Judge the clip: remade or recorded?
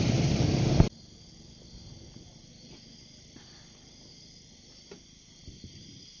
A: recorded